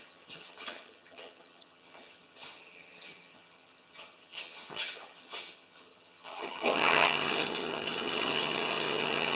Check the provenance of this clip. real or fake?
fake